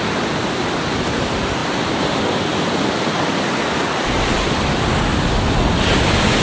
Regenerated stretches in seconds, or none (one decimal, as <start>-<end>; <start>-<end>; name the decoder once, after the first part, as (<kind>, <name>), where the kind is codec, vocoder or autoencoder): none